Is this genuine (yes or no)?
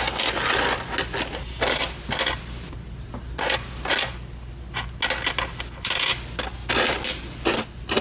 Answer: yes